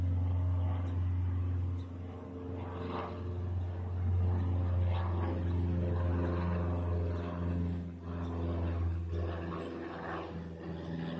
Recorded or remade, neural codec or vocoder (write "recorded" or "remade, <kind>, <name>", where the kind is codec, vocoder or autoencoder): recorded